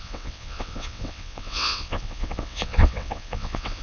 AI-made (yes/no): yes